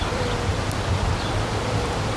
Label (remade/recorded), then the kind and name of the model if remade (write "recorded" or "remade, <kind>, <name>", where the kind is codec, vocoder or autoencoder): remade, vocoder, BigVGAN v2